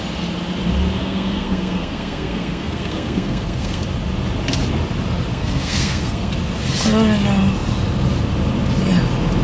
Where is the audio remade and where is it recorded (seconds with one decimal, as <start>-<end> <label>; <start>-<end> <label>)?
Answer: 0.0-1.0 recorded; 1.0-3.8 remade; 3.8-5.3 recorded; 5.3-6.3 remade; 6.3-9.4 recorded